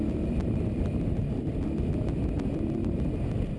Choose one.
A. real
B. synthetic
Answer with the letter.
A